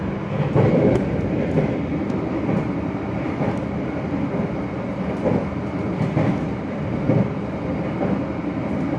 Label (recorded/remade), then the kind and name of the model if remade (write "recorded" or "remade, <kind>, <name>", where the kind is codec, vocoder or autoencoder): recorded